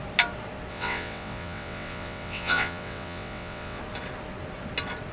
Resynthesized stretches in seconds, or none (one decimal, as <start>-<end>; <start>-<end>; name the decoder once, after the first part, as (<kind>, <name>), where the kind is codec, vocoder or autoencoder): 0.7-3.8 (vocoder, WaveNeXt)